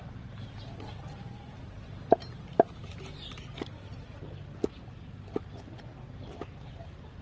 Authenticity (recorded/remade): recorded